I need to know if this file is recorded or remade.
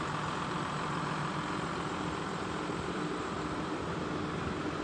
recorded